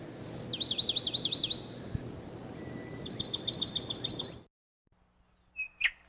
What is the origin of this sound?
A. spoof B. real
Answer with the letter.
B